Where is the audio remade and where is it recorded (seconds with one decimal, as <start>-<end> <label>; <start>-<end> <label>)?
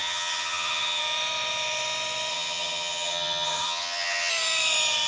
0.0-1.0 remade; 1.0-2.3 recorded; 2.3-4.3 remade; 4.3-5.1 recorded